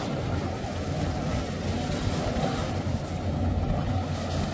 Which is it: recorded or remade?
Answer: recorded